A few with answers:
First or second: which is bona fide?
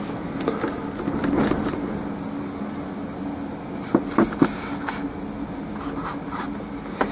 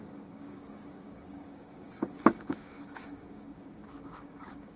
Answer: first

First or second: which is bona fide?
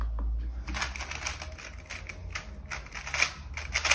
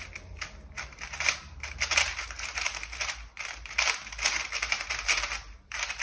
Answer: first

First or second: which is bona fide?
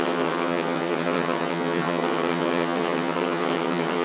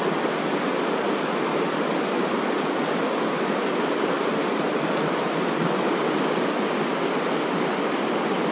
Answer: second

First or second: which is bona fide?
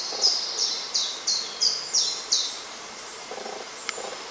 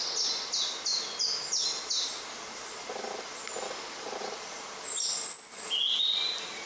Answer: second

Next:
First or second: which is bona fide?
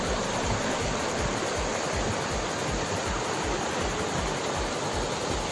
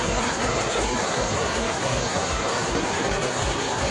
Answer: first